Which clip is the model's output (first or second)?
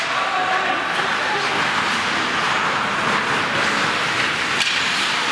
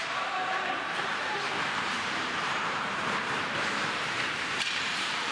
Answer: second